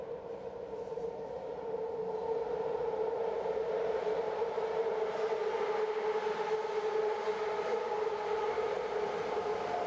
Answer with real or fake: real